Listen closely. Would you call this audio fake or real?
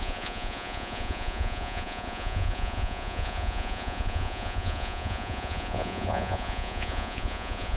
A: fake